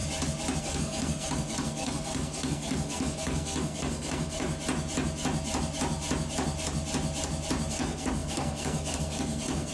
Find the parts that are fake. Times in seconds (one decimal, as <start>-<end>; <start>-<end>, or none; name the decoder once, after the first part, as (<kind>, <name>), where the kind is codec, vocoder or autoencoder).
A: 0.6-4.5 (codec, SNAC); 7.7-9.7